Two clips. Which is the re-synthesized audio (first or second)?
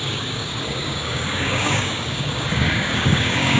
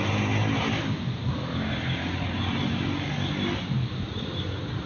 first